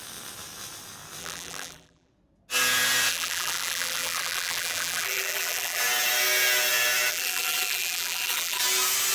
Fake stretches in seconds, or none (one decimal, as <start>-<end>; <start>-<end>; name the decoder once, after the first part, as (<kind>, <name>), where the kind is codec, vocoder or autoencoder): 1.2-2.1 (vocoder, BigVGAN v2); 3.1-5.8; 7.1-8.6